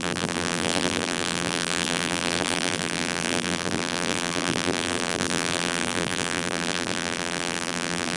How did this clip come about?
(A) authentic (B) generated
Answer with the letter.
B